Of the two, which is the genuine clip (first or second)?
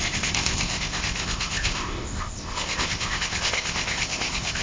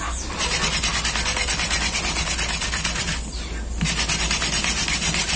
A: second